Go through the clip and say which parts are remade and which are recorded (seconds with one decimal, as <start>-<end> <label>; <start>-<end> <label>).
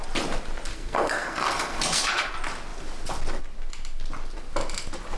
0.0-0.7 recorded; 0.7-2.3 remade; 2.3-5.2 recorded